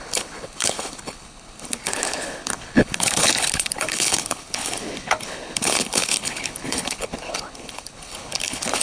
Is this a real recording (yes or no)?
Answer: no